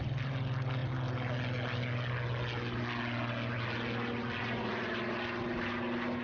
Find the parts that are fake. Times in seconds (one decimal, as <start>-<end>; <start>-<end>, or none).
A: none